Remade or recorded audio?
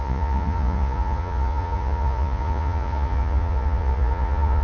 remade